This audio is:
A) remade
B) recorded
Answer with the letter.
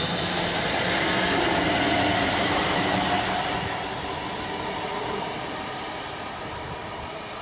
B